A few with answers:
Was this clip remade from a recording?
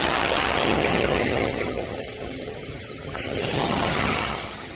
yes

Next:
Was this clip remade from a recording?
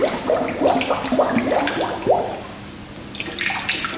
no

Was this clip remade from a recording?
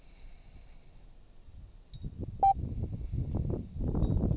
no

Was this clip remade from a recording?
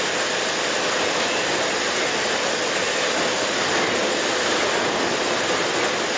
no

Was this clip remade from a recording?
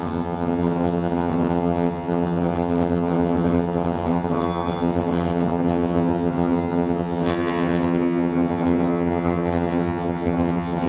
yes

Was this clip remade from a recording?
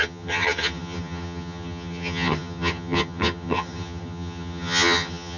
yes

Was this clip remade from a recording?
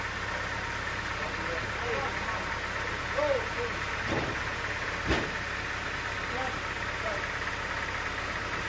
no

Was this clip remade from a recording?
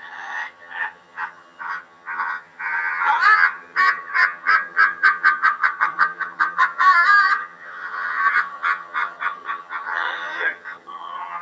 yes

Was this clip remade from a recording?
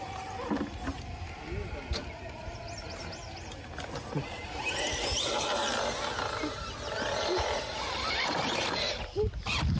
no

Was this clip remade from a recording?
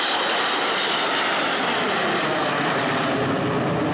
no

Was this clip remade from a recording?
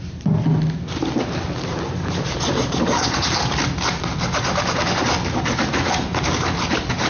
no